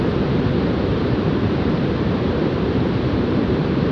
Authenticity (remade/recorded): remade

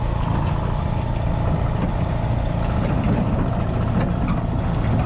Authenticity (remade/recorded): recorded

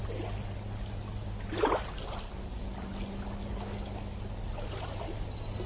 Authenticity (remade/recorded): recorded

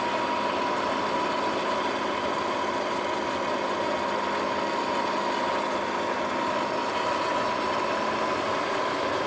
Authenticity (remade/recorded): recorded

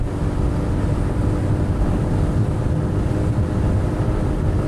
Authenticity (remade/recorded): recorded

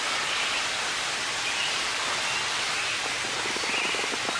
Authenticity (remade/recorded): recorded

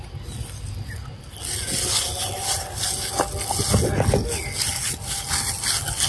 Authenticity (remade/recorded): recorded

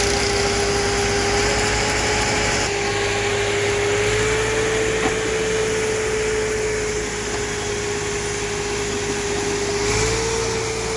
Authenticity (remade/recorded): recorded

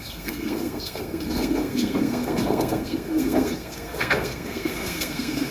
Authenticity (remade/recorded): remade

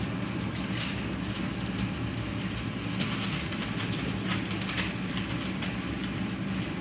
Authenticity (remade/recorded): recorded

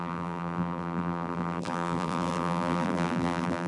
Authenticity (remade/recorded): remade